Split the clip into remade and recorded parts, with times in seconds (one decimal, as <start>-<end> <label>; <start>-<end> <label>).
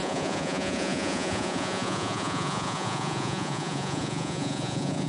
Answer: 0.0-5.1 remade